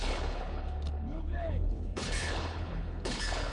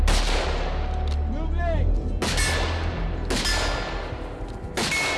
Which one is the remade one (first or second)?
first